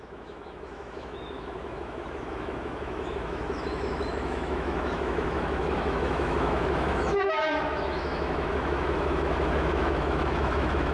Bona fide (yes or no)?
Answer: no